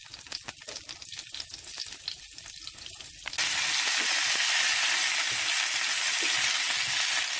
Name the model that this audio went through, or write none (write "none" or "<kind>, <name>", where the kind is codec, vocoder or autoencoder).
none